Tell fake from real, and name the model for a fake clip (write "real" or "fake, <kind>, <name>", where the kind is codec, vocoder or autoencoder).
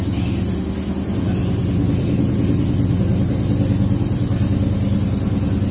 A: real